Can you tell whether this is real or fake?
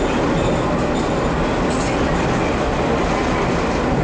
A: real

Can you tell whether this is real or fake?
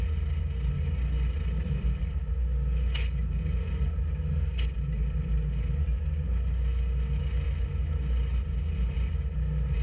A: real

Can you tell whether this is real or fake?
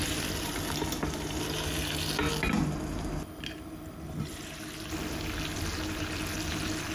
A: real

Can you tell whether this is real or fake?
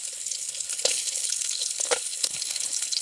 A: fake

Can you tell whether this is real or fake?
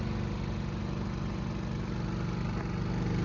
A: real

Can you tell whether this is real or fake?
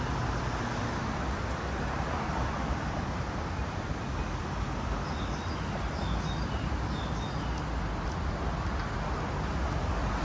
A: real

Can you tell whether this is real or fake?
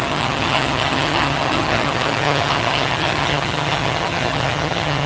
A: fake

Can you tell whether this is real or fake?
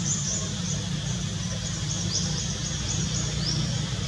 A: real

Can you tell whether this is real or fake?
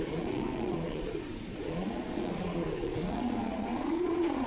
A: fake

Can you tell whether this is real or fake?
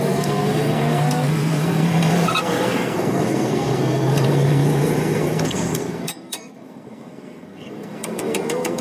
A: fake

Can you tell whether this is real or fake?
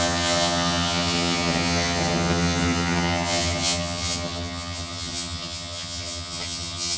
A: fake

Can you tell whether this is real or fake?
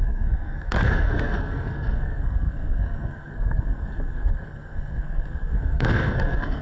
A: fake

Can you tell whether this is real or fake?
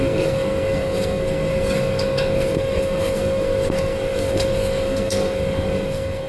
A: fake